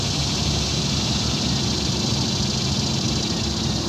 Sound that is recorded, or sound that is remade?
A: recorded